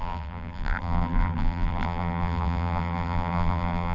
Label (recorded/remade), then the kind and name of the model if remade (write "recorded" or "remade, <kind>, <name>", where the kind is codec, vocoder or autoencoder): remade, vocoder, BigVGAN v2